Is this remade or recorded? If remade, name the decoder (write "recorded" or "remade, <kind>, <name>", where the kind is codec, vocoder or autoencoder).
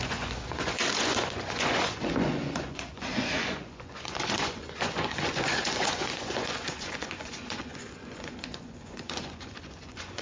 remade, vocoder, Vocos